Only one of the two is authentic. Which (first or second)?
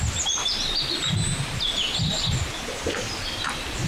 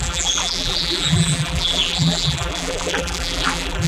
first